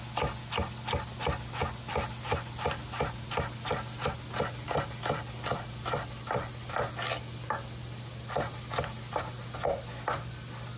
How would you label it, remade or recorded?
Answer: recorded